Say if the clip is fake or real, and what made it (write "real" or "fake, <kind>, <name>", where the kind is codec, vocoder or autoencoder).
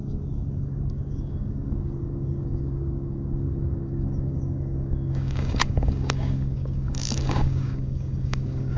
fake, codec, DAC